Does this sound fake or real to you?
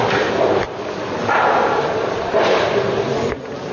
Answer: real